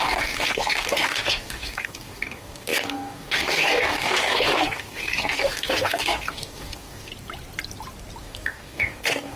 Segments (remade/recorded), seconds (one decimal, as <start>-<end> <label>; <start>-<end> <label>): 0.0-7.1 remade; 7.1-8.2 recorded; 8.2-9.4 remade